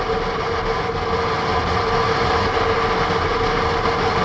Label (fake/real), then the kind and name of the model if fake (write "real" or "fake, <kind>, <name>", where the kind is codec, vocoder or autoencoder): real